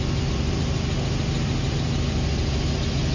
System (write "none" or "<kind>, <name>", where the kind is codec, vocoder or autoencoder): none